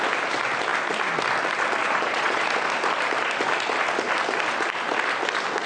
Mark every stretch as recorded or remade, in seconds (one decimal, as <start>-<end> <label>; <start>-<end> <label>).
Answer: 0.0-1.8 recorded; 1.8-2.4 remade; 2.4-5.7 recorded